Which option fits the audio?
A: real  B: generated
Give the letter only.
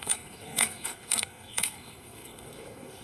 B